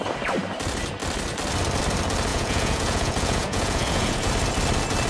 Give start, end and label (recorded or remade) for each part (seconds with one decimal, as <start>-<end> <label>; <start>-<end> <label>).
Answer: 0.0-2.3 recorded; 2.3-4.3 remade; 4.3-5.1 recorded